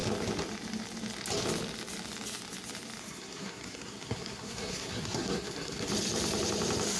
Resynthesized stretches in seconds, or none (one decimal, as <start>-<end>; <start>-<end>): 3.0-5.9